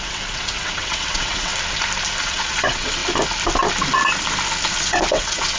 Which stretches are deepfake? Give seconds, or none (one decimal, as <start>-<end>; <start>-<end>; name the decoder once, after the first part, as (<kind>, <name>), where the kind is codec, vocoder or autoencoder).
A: 0.0-1.5 (vocoder, WaveNeXt); 2.2-3.0; 4.7-5.6